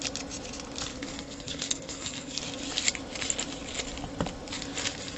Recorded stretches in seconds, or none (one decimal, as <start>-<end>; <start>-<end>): 0.0-0.9; 2.4-5.2